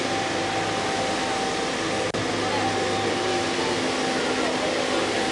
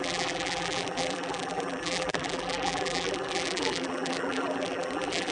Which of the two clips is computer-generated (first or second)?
second